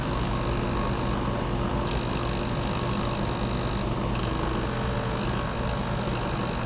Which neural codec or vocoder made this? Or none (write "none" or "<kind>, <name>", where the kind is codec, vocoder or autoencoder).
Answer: none